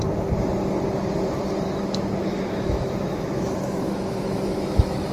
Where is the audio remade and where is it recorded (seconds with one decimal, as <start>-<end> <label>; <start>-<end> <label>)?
0.0-1.7 recorded; 1.7-5.1 remade